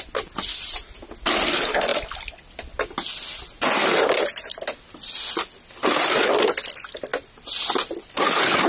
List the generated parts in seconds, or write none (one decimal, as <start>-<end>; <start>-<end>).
none